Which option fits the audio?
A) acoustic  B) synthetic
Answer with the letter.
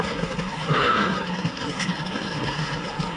B